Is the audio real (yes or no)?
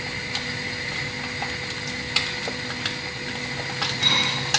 yes